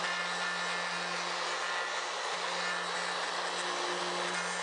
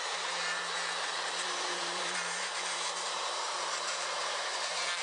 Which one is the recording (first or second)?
first